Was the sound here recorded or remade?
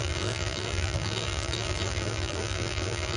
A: remade